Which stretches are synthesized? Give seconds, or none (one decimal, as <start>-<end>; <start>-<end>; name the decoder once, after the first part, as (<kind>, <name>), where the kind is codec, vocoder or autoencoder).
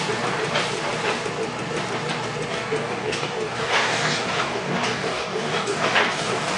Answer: 2.5-6.6 (codec, DAC)